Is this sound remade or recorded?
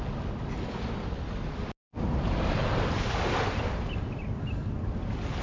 recorded